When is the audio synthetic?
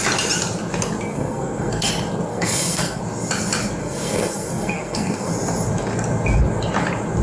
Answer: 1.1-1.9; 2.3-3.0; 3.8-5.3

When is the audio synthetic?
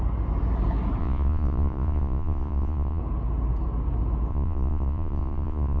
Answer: 1.0-3.0; 4.3-5.8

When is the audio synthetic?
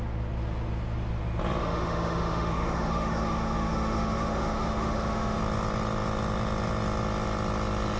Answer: 1.6-5.4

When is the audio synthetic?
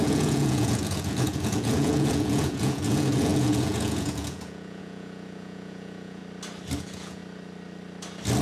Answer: 0.0-6.2; 6.8-7.2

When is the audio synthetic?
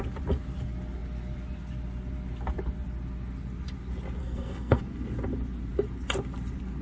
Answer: 4.2-4.8